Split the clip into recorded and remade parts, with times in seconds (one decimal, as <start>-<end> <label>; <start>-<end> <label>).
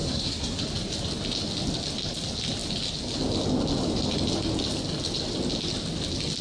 0.0-0.6 remade; 0.6-6.4 recorded